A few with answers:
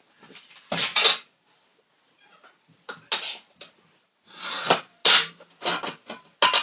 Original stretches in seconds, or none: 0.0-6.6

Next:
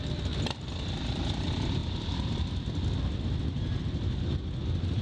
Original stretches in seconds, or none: 0.0-5.0

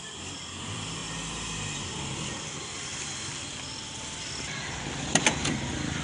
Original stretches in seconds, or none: 1.0-2.2

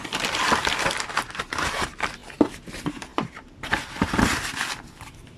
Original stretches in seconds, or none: 0.0-3.1; 4.1-5.4

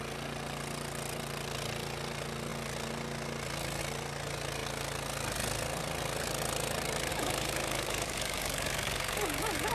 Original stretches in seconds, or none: 0.0-7.1